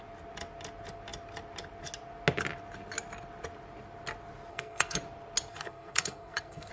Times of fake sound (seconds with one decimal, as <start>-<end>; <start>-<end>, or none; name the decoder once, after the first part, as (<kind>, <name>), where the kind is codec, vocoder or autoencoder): 4.5-5.0 (codec, SNAC); 5.5-6.7